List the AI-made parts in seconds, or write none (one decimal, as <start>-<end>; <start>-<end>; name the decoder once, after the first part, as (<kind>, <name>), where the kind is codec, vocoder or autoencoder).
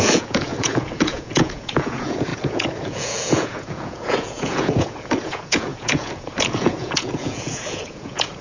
0.0-8.4 (vocoder, Vocos)